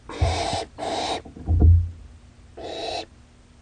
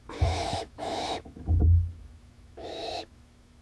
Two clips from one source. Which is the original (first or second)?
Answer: first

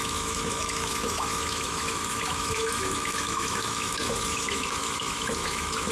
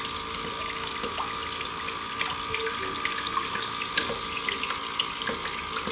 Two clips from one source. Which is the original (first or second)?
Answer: second